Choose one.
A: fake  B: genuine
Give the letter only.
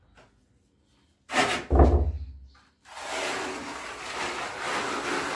B